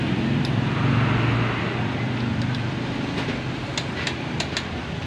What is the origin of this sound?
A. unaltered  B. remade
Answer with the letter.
B